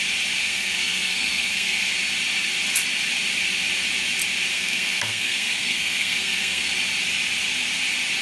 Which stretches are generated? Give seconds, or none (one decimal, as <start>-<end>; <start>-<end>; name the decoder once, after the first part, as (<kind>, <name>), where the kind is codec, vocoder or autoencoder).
0.4-1.9 (codec, SNAC); 4.5-6.7